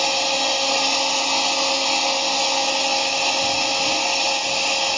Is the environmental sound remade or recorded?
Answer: recorded